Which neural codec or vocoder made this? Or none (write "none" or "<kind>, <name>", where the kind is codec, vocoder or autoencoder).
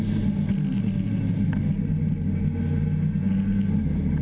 none